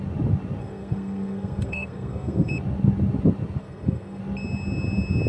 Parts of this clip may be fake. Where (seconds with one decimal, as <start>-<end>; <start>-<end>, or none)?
0.6-2.5; 3.6-4.2